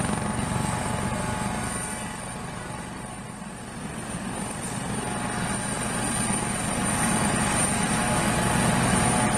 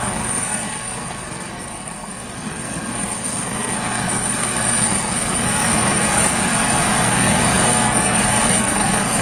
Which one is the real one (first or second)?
first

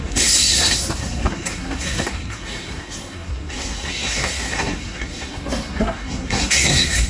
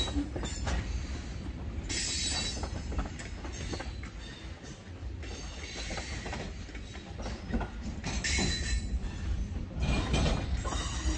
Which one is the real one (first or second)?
second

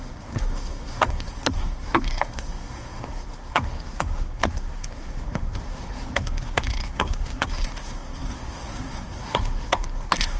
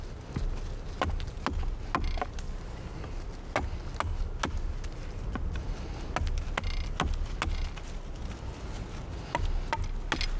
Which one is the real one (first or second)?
second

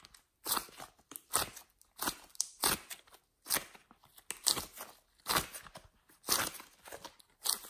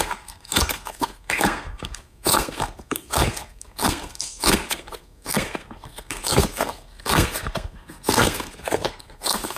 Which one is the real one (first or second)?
first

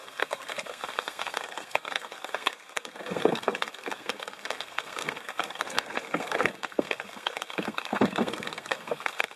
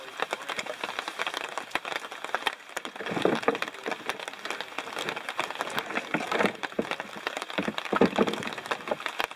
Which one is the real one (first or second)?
second